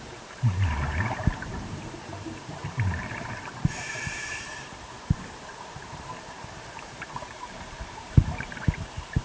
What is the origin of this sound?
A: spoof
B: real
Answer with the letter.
A